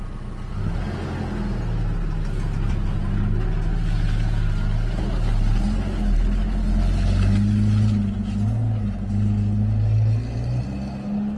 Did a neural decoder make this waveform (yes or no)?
no